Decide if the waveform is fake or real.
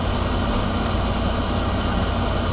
real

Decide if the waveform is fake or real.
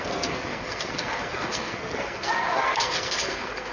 fake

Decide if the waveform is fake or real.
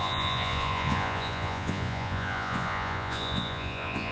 fake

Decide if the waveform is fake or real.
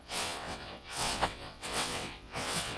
fake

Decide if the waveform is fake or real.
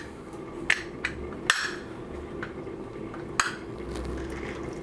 real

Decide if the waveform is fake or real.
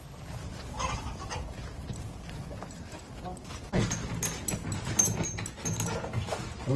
real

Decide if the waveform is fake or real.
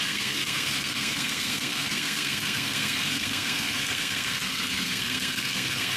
fake